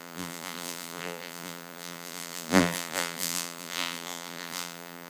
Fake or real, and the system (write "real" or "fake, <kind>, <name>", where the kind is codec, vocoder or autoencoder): fake, vocoder, BigVGAN v2